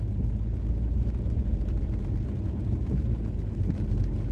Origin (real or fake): real